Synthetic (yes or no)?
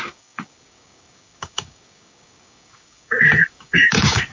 yes